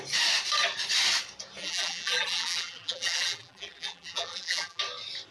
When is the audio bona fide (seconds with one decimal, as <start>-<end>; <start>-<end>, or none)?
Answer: 0.0-1.6; 4.8-5.3